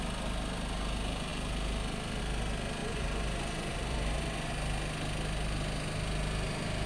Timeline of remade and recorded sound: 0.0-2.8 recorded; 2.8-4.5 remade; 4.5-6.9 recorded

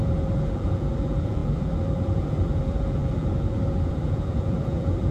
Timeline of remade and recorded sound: 0.0-5.1 remade

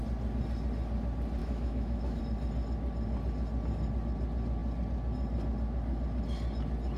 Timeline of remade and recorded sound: 0.0-1.4 recorded; 1.4-2.2 remade; 2.2-7.0 recorded

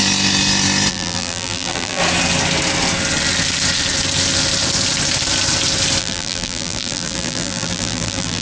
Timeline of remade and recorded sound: 0.0-0.9 recorded; 0.9-2.0 remade; 2.0-6.0 recorded; 6.0-8.4 remade

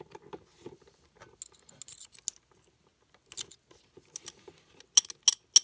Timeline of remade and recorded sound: 0.0-5.6 recorded